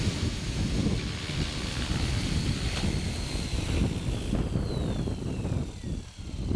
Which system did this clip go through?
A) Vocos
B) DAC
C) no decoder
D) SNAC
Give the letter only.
C